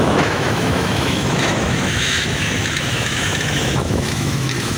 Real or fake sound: fake